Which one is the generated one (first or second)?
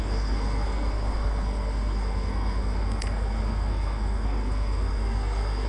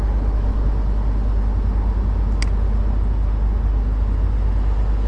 first